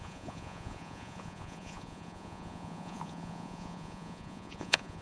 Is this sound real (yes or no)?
no